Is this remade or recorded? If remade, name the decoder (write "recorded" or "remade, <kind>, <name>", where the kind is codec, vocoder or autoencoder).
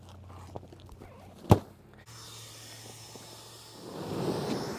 recorded